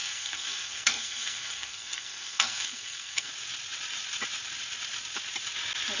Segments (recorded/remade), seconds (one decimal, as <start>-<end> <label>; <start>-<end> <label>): 0.0-3.3 remade; 3.3-6.0 recorded